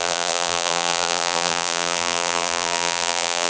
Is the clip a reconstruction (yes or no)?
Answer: yes